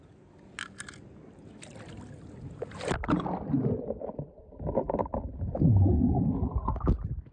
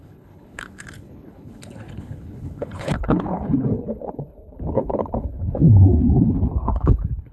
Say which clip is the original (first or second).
first